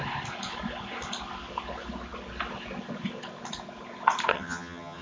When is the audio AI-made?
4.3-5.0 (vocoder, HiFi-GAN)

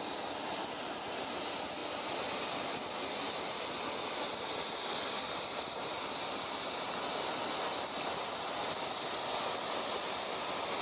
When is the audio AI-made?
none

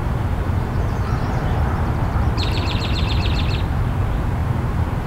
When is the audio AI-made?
0.0-3.1 (vocoder, BigVGAN v2); 4.4-5.1

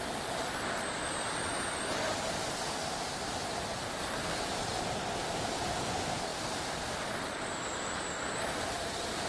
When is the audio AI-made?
6.3-8.2 (vocoder, BigVGAN v2)